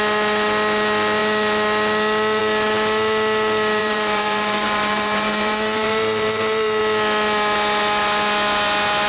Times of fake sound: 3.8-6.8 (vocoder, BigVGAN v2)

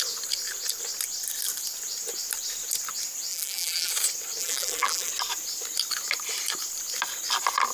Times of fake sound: 3.3-3.9 (vocoder, BigVGAN v2); 4.4-5.1

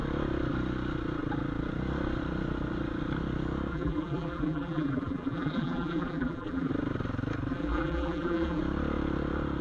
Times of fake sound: 3.7-6.7 (vocoder, BigVGAN v2); 7.5-8.6

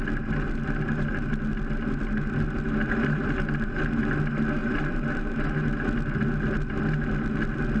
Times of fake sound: 2.8-3.8 (vocoder, BigVGAN v2); 4.6-5.5

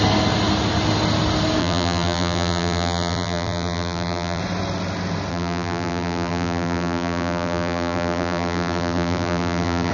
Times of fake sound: 1.6-4.4 (vocoder, BigVGAN v2); 5.3-9.9

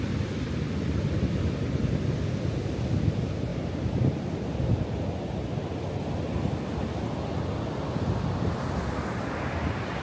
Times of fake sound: 3.5-4.2 (vocoder, BigVGAN v2)